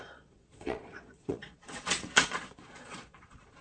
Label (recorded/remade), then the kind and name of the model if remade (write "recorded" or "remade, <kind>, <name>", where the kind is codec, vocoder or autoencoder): remade, vocoder, Vocos